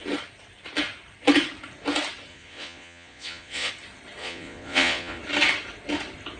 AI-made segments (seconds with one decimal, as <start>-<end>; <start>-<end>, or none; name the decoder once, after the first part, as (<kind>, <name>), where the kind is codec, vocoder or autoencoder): 2.3-3.7 (vocoder, Vocos); 4.2-5.2